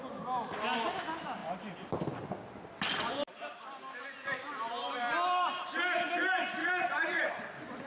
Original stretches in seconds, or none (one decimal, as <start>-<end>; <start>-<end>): 0.0-6.6; 7.3-7.9